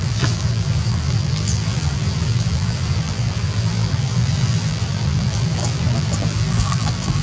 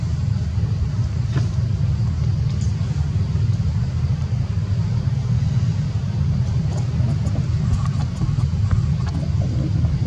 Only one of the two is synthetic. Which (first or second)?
first